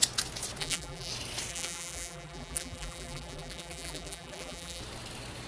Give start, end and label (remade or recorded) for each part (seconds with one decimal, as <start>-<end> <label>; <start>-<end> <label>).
0.0-0.6 recorded; 0.6-1.1 remade; 1.1-1.5 recorded; 1.5-4.8 remade; 4.8-5.5 recorded